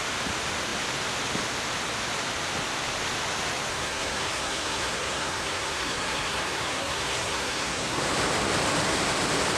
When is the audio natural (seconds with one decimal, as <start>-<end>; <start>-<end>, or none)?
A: 0.0-3.7; 8.0-9.6